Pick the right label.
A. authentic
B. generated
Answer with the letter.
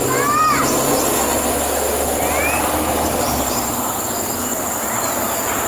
A